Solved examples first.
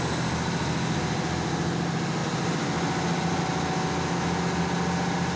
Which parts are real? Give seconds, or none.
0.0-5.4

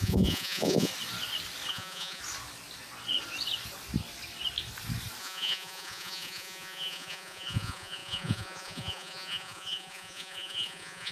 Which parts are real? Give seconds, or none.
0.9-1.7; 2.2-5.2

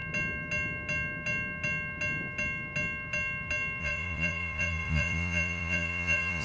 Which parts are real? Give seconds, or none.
0.0-3.8